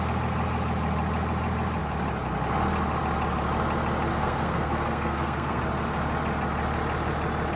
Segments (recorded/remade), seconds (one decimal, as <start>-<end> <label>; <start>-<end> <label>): 0.0-4.1 recorded; 4.1-5.6 remade; 5.6-7.6 recorded